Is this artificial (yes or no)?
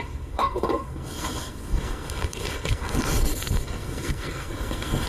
yes